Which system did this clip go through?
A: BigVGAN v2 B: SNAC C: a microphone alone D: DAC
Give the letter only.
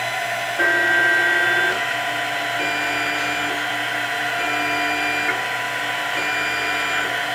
C